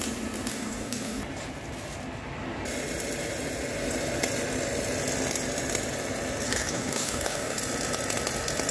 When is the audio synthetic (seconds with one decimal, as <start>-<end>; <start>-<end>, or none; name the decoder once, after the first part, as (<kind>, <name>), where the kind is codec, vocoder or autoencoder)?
0.5-1.2 (codec, DAC); 6.5-7.6